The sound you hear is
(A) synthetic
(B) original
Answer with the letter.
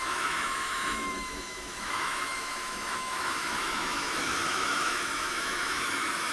A